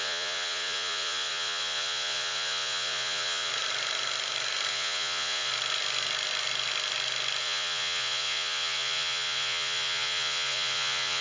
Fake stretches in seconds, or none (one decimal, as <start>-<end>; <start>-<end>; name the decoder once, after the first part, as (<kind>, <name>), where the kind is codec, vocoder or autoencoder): 0.0-3.5 (vocoder, Vocos); 4.7-5.5; 7.4-11.2